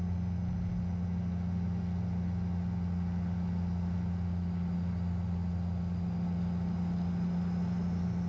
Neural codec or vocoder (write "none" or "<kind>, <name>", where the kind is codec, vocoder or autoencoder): none